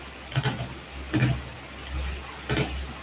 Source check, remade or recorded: recorded